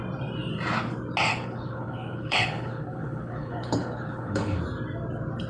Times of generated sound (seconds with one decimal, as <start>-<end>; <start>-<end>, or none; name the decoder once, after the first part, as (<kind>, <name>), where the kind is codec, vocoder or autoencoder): 1.3-4.6 (codec, HILCodec)